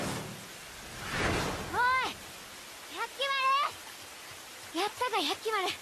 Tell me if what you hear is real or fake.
real